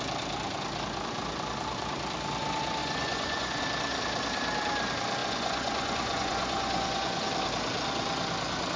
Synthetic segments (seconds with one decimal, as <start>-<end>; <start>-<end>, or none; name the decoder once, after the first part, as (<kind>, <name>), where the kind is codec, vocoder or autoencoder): 2.8-3.6 (vocoder, Vocos); 5.2-7.3